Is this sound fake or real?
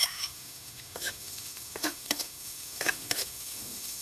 fake